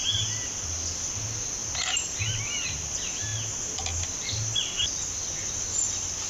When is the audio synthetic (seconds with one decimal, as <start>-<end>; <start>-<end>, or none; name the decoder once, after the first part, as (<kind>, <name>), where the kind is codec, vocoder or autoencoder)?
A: none